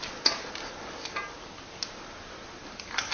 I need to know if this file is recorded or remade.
recorded